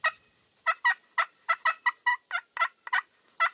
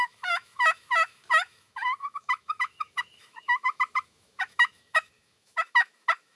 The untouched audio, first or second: first